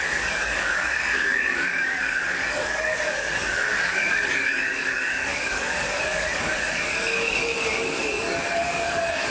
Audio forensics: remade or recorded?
remade